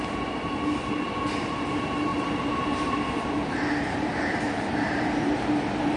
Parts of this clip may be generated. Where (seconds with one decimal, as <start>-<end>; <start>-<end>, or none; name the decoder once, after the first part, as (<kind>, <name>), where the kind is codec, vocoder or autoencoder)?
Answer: 2.1-6.0 (vocoder, BigVGAN v2)

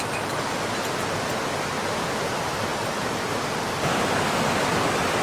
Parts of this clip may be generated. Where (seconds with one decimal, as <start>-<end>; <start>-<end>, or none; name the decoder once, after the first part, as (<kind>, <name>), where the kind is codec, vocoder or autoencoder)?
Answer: none

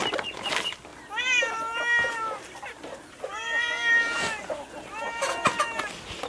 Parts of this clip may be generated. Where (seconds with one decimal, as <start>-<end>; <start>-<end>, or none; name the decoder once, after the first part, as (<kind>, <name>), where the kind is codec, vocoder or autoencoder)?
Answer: none

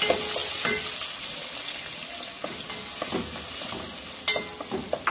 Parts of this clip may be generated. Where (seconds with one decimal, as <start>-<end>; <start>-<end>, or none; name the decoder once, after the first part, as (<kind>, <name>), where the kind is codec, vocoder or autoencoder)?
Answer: none

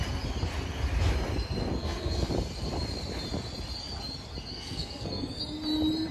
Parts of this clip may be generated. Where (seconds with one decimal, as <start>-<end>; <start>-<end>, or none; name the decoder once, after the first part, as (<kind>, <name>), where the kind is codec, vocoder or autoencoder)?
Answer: 1.8-2.3 (codec, SNAC); 4.5-5.4

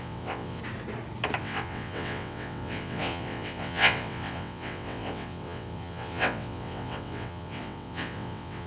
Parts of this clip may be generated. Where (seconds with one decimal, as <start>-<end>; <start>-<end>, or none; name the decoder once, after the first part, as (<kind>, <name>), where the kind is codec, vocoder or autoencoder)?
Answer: 0.0-0.6 (vocoder, WaveNeXt); 1.4-8.7